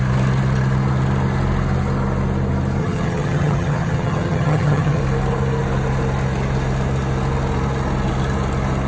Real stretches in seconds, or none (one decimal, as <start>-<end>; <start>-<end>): 0.0-2.8; 5.0-8.9